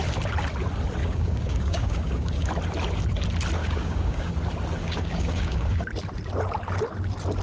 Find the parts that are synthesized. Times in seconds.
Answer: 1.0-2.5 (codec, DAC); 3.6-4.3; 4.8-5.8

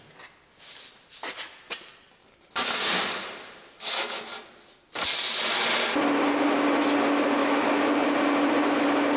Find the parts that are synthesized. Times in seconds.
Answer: 7.4-7.9 (autoencoder, DAC-VAE)

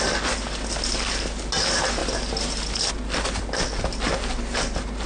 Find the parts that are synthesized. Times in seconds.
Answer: none

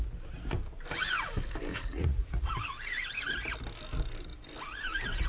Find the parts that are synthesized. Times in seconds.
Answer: 1.7-2.5 (vocoder, Vocos)

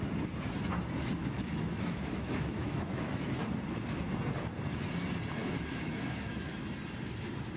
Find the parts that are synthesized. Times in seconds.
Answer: 1.2-3.4 (autoencoder, DAC-VAE); 5.4-6.6

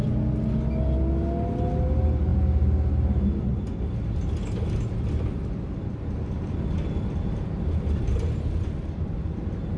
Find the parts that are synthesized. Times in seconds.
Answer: none

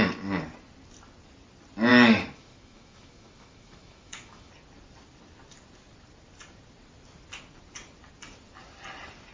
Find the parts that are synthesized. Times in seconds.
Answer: 1.9-4.5 (autoencoder, DAC-VAE)